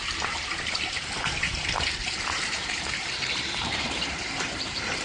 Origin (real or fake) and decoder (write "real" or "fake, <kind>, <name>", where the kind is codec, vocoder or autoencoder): fake, vocoder, BigVGAN v2